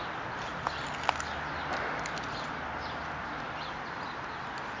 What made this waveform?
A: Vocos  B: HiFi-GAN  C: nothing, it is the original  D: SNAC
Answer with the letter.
C